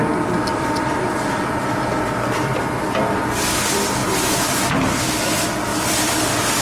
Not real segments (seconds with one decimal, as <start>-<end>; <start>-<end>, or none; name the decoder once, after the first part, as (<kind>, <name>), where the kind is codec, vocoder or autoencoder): 0.5-1.5 (vocoder, BigVGAN v2); 5.7-6.6